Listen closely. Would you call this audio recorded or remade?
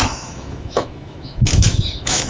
remade